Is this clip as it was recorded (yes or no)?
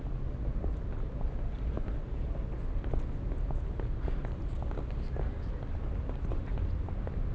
yes